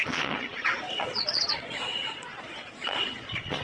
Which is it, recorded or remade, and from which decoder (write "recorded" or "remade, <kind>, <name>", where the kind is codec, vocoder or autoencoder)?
remade, vocoder, Vocos